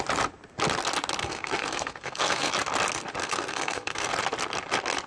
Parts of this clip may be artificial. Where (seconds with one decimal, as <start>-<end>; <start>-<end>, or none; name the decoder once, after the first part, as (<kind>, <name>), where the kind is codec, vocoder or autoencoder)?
1.2-2.5 (codec, SNAC); 3.2-4.1